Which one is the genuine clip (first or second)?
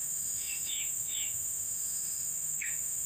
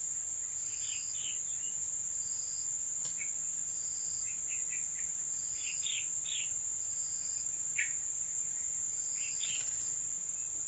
second